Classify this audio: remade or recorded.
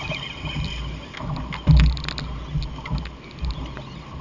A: recorded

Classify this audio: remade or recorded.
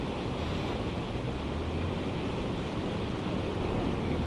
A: recorded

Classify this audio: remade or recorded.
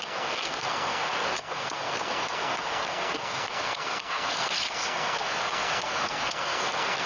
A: remade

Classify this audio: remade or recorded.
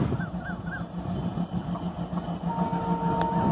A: recorded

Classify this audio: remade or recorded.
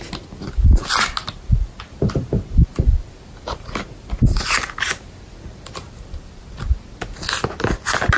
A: recorded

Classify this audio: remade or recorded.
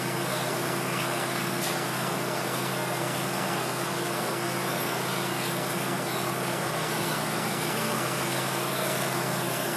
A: remade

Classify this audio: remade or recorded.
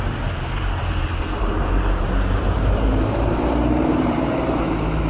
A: remade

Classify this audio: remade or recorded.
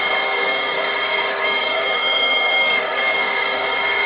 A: remade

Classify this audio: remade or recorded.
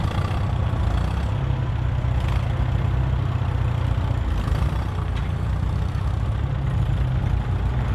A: recorded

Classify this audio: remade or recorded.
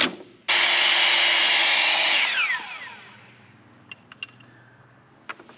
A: recorded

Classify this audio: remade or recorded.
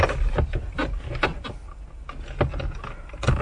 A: recorded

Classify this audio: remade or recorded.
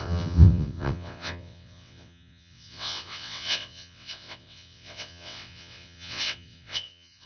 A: remade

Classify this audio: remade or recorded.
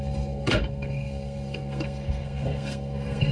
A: remade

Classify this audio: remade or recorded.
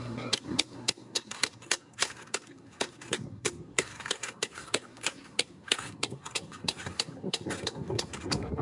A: remade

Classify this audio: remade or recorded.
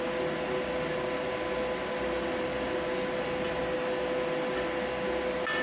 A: recorded